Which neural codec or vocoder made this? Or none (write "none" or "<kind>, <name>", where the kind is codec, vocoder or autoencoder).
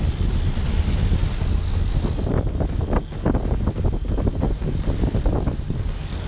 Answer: none